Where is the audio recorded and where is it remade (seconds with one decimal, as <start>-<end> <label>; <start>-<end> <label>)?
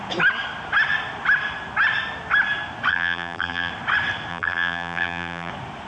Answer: 0.0-2.9 recorded; 2.9-3.7 remade; 3.7-4.3 recorded; 4.3-5.5 remade; 5.5-5.9 recorded